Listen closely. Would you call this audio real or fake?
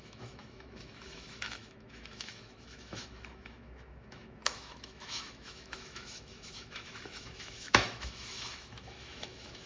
fake